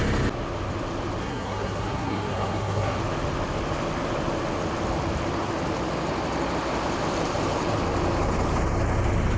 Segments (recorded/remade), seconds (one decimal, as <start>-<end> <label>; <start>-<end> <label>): 0.0-1.2 recorded; 1.2-3.0 remade; 3.0-9.4 recorded